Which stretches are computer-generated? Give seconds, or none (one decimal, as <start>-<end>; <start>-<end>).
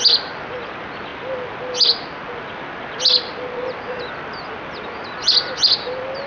none